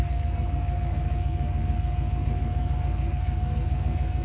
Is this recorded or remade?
remade